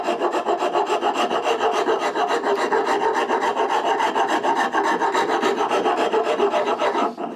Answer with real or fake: real